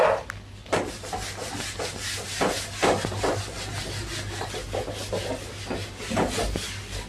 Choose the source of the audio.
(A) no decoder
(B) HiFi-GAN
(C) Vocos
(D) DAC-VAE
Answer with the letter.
A